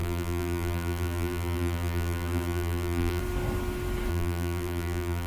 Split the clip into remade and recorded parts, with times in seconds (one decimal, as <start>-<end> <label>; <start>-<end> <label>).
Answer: 0.0-3.2 remade; 3.2-4.1 recorded; 4.1-5.3 remade